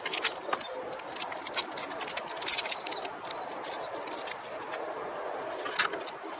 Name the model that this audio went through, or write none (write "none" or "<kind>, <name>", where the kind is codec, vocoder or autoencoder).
none